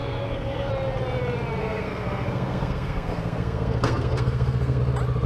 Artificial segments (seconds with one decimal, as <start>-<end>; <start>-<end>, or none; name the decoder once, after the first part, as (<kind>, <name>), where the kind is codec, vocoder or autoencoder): 0.0-0.7 (codec, SNAC); 1.6-4.8